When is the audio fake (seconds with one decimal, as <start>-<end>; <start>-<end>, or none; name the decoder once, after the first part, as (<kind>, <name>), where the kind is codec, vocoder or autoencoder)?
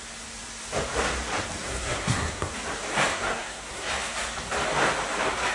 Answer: 1.6-2.5 (codec, SNAC); 3.1-3.9